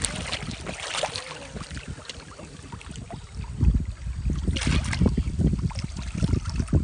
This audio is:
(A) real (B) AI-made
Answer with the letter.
A